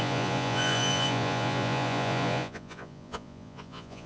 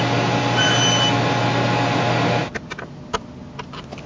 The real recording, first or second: second